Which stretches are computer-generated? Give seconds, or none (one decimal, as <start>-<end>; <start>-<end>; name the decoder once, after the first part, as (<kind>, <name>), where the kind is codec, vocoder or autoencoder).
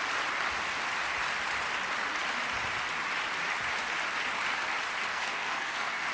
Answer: 5.1-6.1 (codec, SNAC)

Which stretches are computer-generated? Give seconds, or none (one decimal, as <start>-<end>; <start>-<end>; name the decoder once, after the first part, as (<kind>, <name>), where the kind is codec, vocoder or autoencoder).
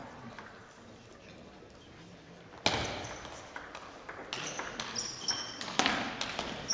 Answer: none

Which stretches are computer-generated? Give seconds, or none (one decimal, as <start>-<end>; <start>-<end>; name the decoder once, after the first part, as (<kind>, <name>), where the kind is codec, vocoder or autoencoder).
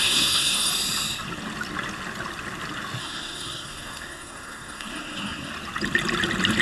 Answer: 0.0-0.7 (codec, SNAC); 3.0-5.5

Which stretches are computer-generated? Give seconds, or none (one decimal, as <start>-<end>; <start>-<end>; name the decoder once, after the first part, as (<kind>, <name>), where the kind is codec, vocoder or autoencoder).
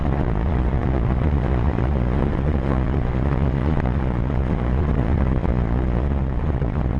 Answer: 0.0-7.0 (vocoder, Vocos)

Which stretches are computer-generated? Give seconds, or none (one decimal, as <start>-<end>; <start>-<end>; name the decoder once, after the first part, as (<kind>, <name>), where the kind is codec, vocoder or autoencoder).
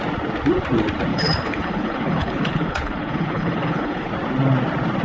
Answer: 1.1-4.1 (codec, HILCodec)